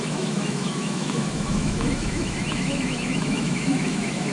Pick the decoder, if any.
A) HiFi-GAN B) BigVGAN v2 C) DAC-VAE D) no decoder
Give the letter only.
C